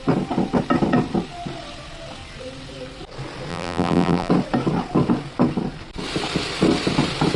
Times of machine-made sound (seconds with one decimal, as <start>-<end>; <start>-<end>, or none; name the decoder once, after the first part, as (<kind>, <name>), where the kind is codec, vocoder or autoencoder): 3.5-4.3 (vocoder, BigVGAN v2)